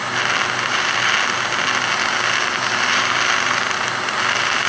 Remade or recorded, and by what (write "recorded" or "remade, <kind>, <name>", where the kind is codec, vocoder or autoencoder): recorded